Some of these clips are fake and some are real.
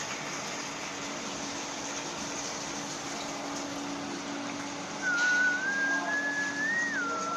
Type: real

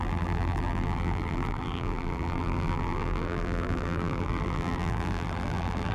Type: fake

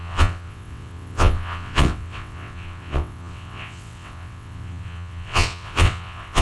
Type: fake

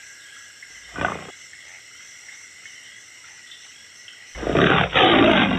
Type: real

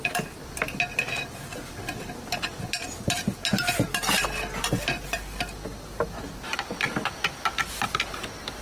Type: real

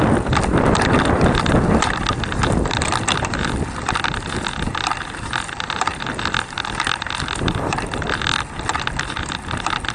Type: real